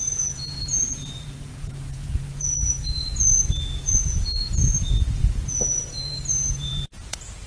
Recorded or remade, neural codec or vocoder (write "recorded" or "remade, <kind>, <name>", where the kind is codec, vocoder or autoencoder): remade, vocoder, Vocos